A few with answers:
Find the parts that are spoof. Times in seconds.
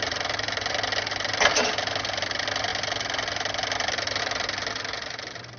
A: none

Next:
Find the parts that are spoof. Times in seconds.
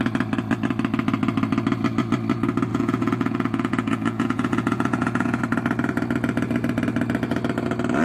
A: 2.7-5.4 (vocoder, Vocos)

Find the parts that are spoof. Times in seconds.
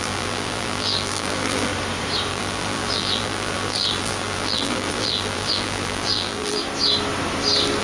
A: 0.0-1.7 (vocoder, BigVGAN v2); 2.3-6.6